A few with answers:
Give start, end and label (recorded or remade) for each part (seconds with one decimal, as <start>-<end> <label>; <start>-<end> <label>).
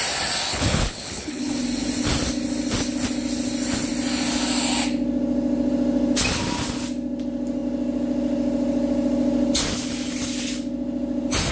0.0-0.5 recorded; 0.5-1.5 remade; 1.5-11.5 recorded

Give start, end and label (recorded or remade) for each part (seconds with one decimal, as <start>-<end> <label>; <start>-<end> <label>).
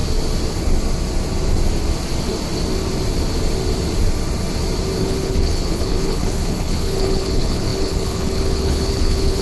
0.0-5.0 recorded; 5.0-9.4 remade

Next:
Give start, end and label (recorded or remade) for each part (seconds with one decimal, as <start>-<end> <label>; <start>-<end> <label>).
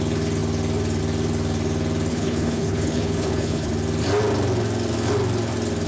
0.0-2.1 recorded; 2.1-3.7 remade; 3.7-5.9 recorded